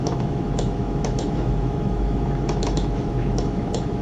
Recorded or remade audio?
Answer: remade